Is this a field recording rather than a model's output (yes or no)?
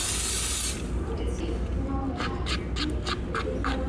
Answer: yes